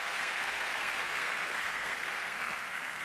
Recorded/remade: remade